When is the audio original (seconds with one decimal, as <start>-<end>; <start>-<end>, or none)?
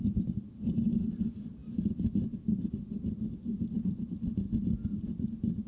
0.0-5.7